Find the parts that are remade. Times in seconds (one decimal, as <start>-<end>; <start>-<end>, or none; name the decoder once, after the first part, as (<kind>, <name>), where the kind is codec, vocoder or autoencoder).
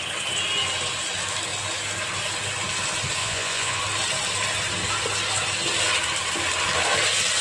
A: 3.2-3.8 (vocoder, Vocos)